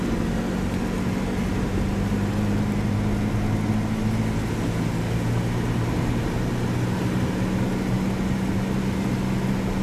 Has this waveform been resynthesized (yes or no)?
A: no